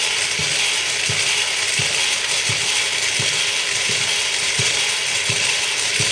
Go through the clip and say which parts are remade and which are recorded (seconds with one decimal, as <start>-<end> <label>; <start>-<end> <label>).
0.0-6.1 recorded